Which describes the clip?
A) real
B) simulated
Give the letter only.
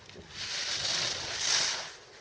A